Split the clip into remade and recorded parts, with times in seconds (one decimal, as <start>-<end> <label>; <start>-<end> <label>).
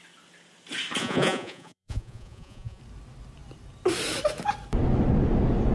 0.0-1.0 recorded; 1.0-2.8 remade; 2.8-5.7 recorded